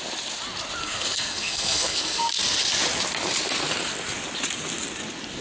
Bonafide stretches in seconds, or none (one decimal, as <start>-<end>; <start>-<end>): 0.0-0.8; 2.3-5.4